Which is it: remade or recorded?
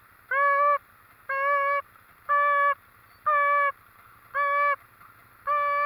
recorded